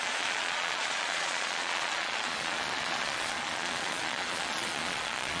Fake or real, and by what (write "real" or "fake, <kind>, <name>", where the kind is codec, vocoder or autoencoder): fake, vocoder, Vocos